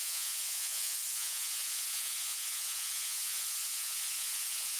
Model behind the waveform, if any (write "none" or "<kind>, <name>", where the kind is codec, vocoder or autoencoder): vocoder, Vocos